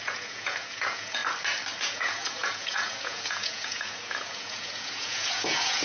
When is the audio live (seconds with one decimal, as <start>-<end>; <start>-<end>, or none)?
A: 1.2-1.8